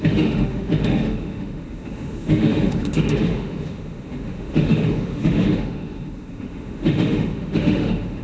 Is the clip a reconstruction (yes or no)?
yes